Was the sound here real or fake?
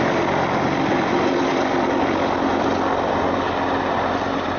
real